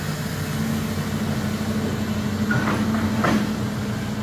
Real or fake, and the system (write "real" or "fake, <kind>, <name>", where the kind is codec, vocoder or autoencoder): real